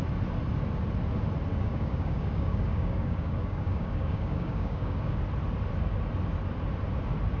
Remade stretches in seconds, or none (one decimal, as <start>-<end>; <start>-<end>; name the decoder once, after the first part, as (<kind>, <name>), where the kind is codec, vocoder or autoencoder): 1.5-5.2 (codec, DAC)